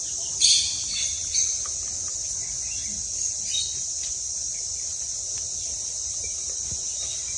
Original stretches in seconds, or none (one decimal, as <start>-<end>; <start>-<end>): 0.0-7.4

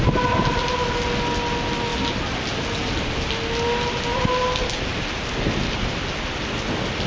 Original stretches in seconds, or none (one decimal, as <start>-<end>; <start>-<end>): 0.0-7.1

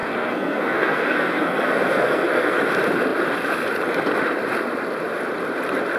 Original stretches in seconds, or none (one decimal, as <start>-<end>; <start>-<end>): 2.6-6.0

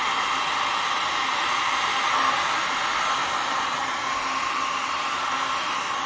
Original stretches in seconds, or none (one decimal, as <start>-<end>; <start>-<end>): 0.0-1.3; 2.0-3.2; 4.6-6.1

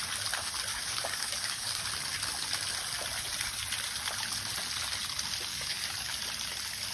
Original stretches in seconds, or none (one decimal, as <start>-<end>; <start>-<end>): 0.0-0.7; 1.8-5.5; 6.2-6.9

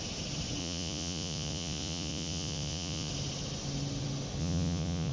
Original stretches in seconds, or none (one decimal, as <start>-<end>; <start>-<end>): 0.0-0.6; 3.1-4.4

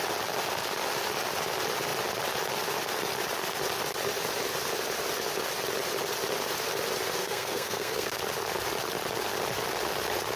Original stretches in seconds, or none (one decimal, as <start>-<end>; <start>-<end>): 0.0-7.2; 8.2-10.4

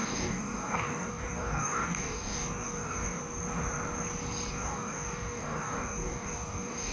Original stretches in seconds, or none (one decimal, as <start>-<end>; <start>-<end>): 3.2-4.5